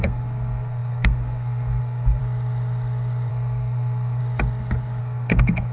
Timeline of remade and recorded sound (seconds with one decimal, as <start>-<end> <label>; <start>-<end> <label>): 0.0-2.2 remade; 2.2-3.3 recorded; 3.3-4.2 remade; 4.2-5.0 recorded; 5.0-5.7 remade